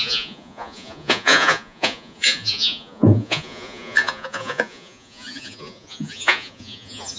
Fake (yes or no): yes